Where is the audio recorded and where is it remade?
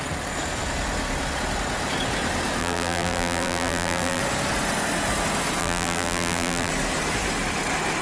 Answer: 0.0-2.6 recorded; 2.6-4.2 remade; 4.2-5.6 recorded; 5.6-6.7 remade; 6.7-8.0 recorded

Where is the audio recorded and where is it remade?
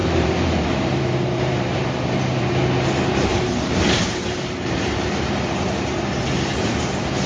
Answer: 0.0-2.5 remade; 2.5-3.3 recorded; 3.3-5.3 remade; 5.3-7.3 recorded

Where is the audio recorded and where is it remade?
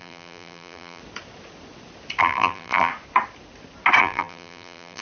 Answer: 0.0-1.0 remade; 1.0-2.2 recorded; 2.2-2.9 remade; 2.9-4.0 recorded; 4.0-5.0 remade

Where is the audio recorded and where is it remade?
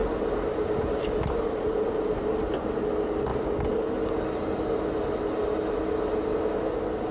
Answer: 0.0-7.1 recorded